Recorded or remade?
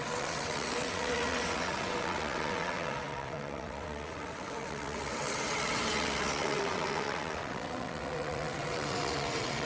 remade